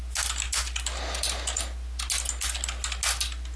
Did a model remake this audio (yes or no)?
no